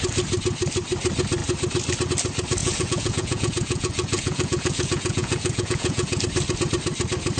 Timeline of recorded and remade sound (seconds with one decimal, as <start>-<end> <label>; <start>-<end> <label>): 0.0-2.6 recorded; 2.6-6.2 remade; 6.2-7.4 recorded